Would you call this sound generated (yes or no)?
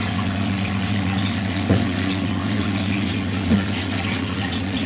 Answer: yes